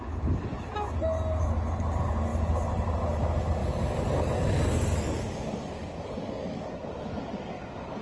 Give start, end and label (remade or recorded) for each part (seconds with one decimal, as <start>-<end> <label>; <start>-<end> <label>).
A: 0.0-3.6 recorded; 3.6-6.7 remade; 6.7-8.0 recorded